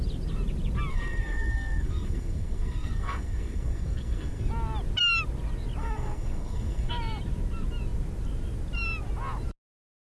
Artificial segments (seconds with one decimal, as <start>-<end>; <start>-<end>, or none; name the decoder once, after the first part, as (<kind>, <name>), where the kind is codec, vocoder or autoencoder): 0.9-4.5 (codec, SNAC); 5.8-6.9